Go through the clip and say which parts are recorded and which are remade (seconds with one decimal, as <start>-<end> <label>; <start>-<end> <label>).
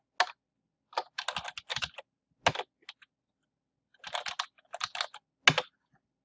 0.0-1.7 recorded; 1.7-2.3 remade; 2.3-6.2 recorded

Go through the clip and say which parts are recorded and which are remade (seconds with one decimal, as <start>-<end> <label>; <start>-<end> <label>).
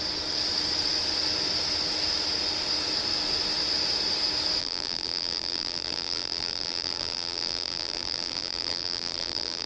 0.0-4.6 recorded; 4.6-9.7 remade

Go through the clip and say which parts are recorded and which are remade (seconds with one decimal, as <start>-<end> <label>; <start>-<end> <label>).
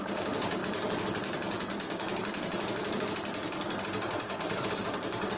0.0-0.6 remade; 0.6-3.8 recorded; 3.8-5.4 remade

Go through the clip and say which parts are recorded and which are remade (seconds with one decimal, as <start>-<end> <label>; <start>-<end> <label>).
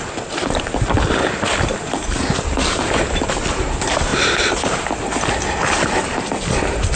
0.0-7.0 recorded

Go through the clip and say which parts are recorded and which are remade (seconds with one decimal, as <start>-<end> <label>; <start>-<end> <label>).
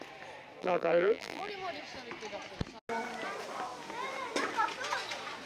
0.0-0.6 recorded; 0.6-1.5 remade; 1.5-5.5 recorded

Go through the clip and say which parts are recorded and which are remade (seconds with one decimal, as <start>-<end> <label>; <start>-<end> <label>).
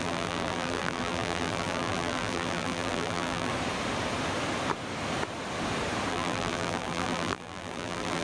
0.0-3.5 remade; 3.5-6.1 recorded; 6.1-8.2 remade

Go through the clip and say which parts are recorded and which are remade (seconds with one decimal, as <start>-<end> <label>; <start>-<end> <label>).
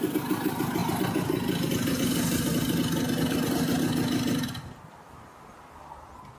0.0-6.4 recorded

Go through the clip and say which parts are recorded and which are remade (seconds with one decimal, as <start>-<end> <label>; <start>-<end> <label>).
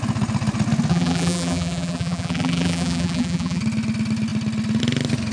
0.0-0.9 recorded; 0.9-3.6 remade; 3.6-5.3 recorded